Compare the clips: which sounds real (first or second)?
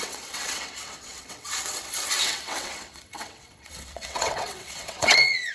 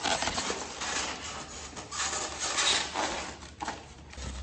second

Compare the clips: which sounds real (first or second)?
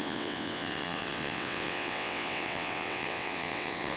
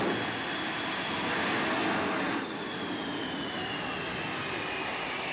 second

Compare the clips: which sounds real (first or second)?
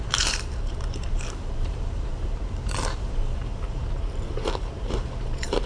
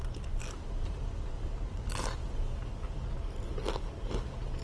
second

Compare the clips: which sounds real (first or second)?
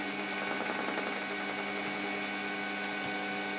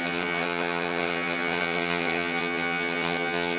first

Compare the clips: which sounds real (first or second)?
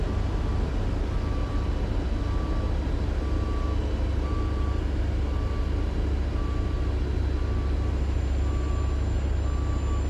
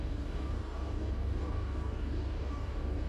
first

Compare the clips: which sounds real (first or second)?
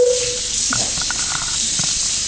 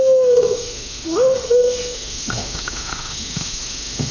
first